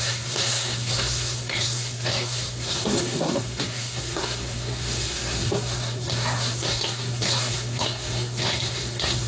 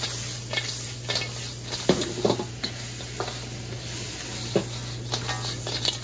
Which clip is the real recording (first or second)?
second